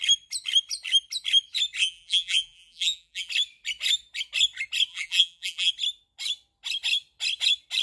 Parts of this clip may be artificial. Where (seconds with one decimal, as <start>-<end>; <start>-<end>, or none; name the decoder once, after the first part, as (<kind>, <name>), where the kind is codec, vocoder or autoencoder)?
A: 1.8-3.3 (vocoder, BigVGAN v2); 4.9-5.7